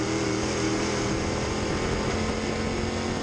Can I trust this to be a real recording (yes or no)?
yes